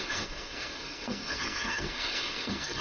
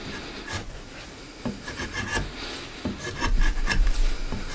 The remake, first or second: first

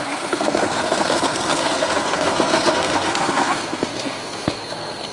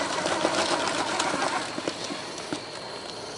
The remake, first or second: first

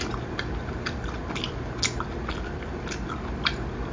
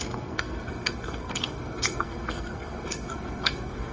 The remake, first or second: second